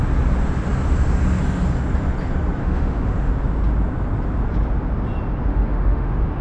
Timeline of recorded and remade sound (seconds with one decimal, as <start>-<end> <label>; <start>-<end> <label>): 0.0-2.6 recorded; 2.6-3.3 remade; 3.3-5.5 recorded; 5.5-6.4 remade